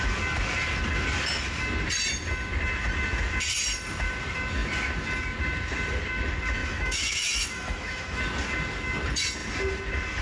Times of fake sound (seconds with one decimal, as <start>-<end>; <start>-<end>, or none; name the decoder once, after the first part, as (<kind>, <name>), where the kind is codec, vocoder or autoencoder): 6.6-8.2 (autoencoder, DAC-VAE)